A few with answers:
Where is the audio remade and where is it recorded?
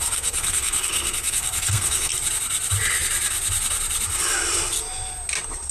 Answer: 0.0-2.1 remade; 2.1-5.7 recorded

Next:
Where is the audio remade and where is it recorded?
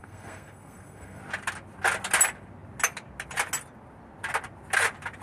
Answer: 0.0-1.2 remade; 1.2-5.2 recorded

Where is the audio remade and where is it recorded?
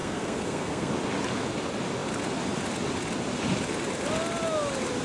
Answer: 0.0-0.9 remade; 0.9-5.0 recorded